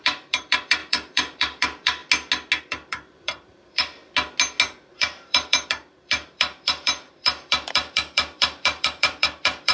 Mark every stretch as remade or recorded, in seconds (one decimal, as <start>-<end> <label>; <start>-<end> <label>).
0.0-2.0 remade; 2.0-2.6 recorded; 2.6-4.0 remade; 4.0-4.9 recorded; 4.9-9.7 remade